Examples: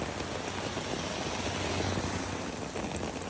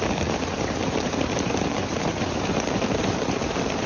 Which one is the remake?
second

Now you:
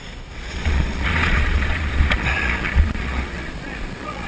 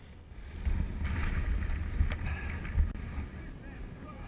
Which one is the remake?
first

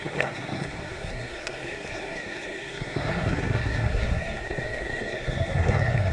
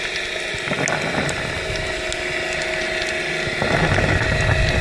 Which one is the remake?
first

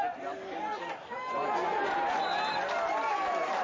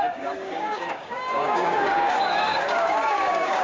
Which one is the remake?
second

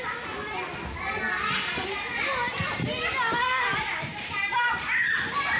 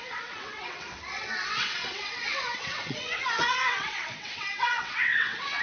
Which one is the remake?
second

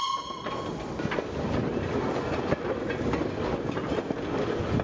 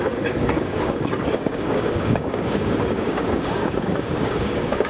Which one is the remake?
second